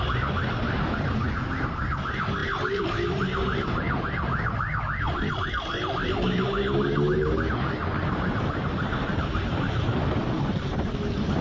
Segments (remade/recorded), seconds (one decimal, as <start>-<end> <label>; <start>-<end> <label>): 0.0-2.4 recorded; 2.4-5.4 remade; 5.4-7.8 recorded; 7.8-10.2 remade; 10.2-11.4 recorded